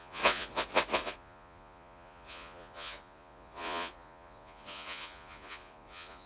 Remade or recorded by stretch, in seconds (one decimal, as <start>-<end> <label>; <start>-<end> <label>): 0.0-6.3 remade